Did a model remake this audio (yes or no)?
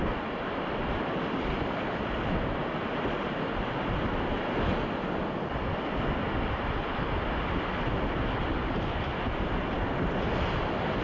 no